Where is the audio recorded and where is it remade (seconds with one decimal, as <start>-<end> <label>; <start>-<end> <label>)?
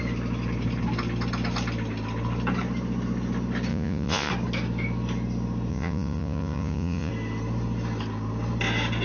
0.0-3.7 recorded; 3.7-4.3 remade; 4.3-5.7 recorded; 5.7-7.1 remade; 7.1-9.0 recorded